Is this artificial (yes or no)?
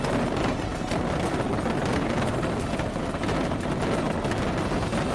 no